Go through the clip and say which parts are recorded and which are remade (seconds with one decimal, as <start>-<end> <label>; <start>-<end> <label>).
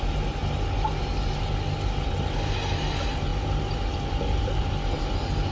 0.0-5.5 recorded